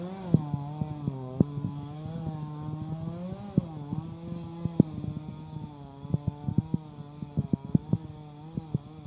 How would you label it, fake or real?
real